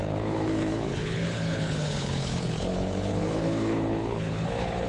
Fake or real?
fake